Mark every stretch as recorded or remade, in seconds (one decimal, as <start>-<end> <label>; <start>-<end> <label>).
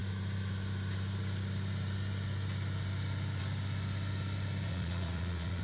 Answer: 0.0-4.7 recorded; 4.7-5.6 remade